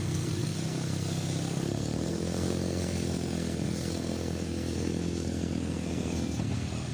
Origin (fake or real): fake